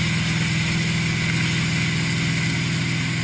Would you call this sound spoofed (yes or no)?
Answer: no